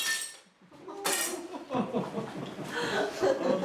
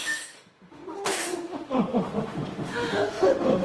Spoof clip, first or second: second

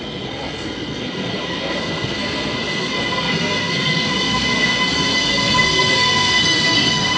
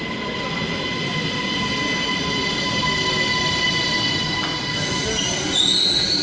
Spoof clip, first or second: first